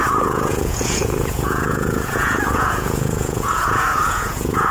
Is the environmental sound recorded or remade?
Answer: remade